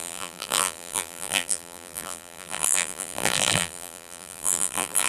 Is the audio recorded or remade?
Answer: remade